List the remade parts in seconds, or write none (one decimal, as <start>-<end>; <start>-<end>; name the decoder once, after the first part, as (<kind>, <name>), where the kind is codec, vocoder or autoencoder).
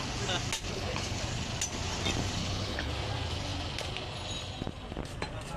0.7-1.2 (codec, HILCodec); 2.4-2.9